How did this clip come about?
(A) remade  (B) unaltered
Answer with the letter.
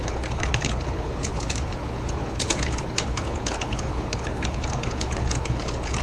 A